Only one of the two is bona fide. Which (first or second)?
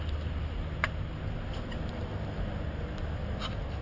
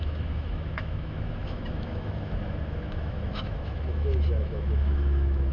first